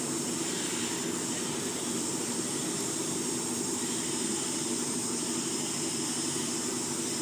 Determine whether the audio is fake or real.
real